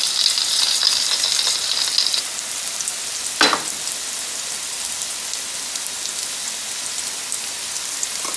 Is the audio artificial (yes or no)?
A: no